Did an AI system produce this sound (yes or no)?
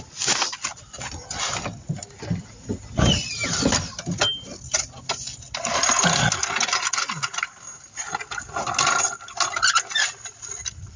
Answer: no